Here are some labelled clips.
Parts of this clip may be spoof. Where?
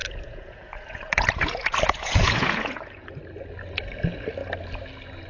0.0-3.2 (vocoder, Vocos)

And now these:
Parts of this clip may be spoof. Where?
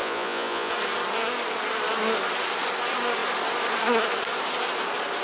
0.0-0.7 (vocoder, Vocos)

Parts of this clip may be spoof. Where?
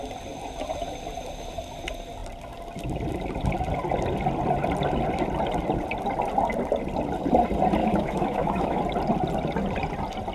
7.8-8.8 (autoencoder, DAC-VAE)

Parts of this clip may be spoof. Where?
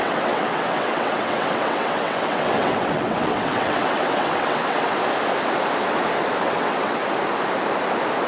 0.0-4.9 (vocoder, WaveNeXt); 6.4-7.0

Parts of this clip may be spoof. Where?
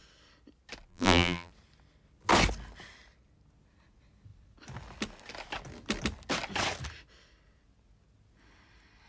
0.9-1.5 (vocoder, BigVGAN v2)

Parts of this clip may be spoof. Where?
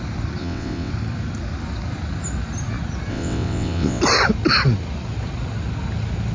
0.4-0.9 (vocoder, WaveNeXt); 3.1-4.0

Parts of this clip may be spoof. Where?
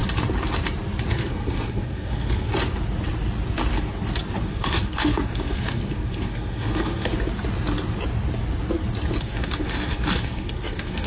1.1-2.5 (codec, SNAC); 4.5-7.1; 9.2-11.1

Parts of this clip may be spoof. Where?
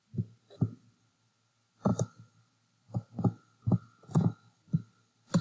none